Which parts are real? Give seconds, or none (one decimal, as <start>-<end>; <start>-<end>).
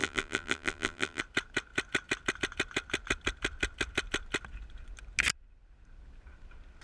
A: 1.2-6.8